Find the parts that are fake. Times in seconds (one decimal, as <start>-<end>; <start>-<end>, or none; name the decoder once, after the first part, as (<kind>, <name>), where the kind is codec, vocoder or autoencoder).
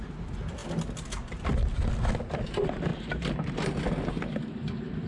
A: none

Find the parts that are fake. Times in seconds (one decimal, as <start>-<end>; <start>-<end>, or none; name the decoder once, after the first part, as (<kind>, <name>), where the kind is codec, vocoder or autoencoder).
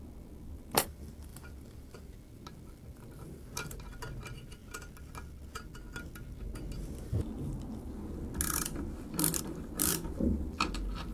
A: 0.0-4.6 (vocoder, BigVGAN v2); 9.4-11.1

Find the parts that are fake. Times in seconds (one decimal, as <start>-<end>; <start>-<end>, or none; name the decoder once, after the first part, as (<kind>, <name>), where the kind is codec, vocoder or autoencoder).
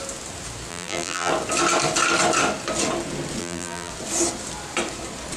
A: 0.7-1.3 (vocoder, BigVGAN v2); 3.4-3.9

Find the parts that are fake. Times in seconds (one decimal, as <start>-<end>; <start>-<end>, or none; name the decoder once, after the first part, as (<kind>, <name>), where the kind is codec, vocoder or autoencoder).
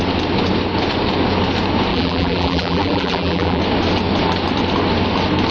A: 1.9-3.6 (vocoder, BigVGAN v2)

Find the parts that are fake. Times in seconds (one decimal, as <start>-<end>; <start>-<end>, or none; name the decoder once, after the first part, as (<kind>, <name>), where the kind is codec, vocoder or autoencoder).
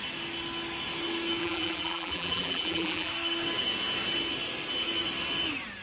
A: 1.4-3.1 (vocoder, BigVGAN v2)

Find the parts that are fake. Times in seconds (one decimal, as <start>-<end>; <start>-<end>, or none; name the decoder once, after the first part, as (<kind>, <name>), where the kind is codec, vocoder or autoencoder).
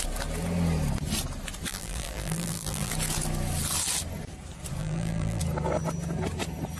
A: 1.7-2.9 (vocoder, BigVGAN v2); 4.8-5.4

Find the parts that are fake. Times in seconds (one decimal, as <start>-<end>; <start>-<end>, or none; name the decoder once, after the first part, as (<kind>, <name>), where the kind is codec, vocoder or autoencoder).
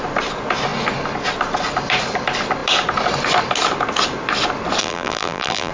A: 4.8-5.7 (vocoder, BigVGAN v2)